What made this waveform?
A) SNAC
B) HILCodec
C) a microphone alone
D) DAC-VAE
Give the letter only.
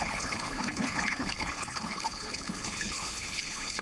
B